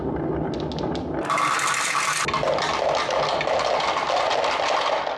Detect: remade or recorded recorded